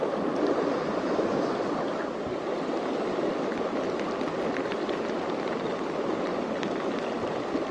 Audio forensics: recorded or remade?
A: remade